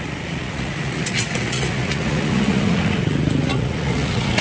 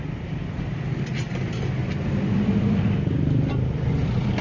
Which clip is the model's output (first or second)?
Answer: first